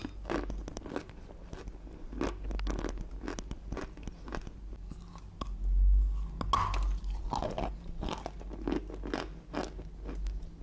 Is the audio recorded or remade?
recorded